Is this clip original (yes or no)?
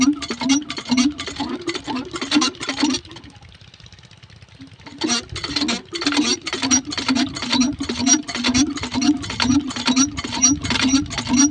yes